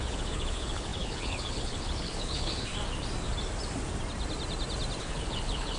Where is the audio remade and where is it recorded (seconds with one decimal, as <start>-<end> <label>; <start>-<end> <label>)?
0.0-2.7 remade; 2.7-5.0 recorded; 5.0-5.8 remade